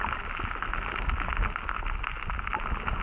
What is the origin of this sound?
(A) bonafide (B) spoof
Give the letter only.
A